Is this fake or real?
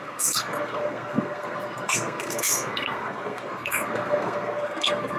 fake